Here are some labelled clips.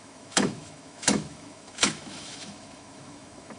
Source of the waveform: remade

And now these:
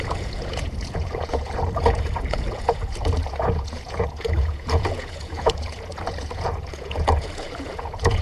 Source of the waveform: remade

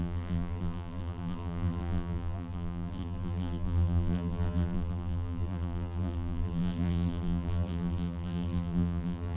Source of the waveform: remade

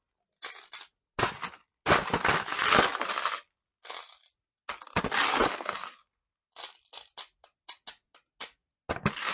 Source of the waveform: recorded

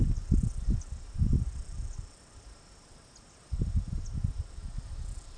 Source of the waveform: recorded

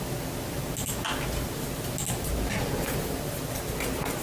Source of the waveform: recorded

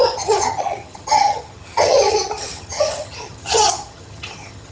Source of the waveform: remade